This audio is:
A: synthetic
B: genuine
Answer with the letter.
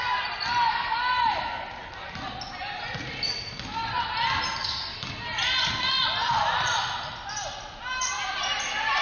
B